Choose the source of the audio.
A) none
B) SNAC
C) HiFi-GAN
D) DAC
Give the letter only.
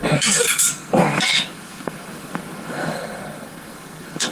B